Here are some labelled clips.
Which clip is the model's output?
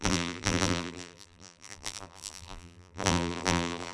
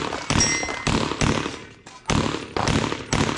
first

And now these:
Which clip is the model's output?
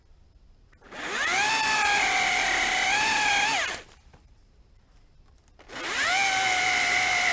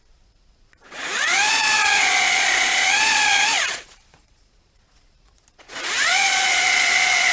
second